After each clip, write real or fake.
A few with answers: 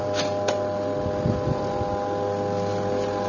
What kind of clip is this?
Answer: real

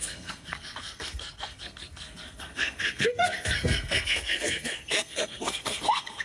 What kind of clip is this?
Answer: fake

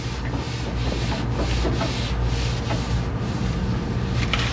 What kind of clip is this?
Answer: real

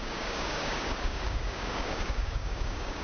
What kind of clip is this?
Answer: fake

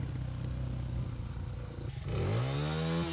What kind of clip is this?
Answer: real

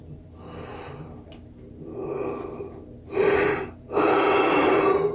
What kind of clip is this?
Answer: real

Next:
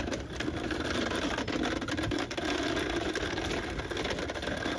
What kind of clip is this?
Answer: real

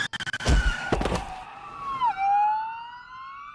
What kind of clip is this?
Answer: real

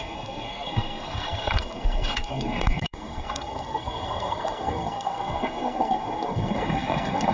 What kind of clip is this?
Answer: fake